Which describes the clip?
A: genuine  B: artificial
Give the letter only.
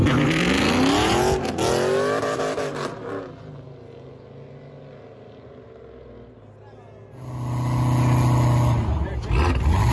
A